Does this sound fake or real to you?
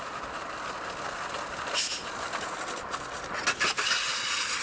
real